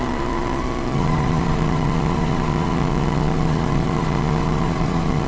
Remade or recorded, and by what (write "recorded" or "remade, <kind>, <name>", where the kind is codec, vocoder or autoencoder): remade, vocoder, Vocos